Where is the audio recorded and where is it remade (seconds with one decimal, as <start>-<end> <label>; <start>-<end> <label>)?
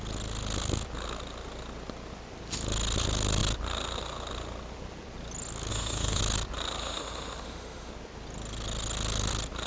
0.0-5.7 recorded; 5.7-6.2 remade; 6.2-6.8 recorded; 6.8-7.9 remade; 7.9-9.7 recorded